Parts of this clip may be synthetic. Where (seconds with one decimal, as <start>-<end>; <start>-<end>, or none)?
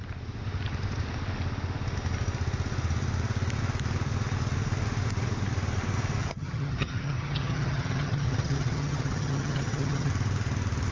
6.2-10.1